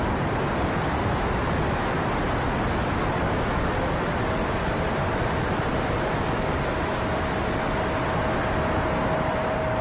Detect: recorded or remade recorded